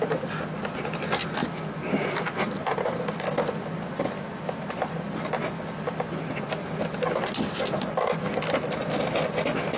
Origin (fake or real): real